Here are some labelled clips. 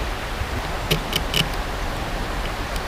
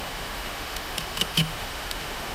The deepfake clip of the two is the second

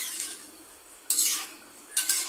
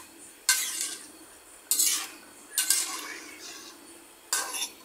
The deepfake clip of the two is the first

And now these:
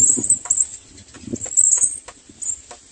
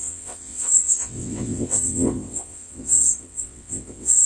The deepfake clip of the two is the second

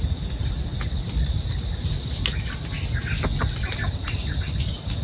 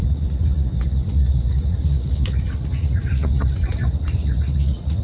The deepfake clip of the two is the second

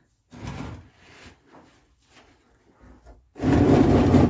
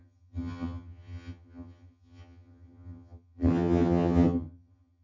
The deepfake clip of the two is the second